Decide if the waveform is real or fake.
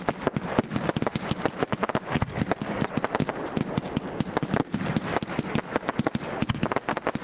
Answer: real